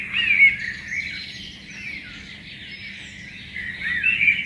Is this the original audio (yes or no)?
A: yes